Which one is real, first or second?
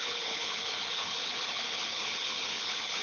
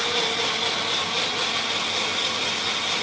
second